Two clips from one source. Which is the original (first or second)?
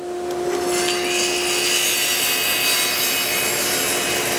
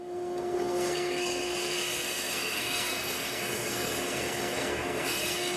first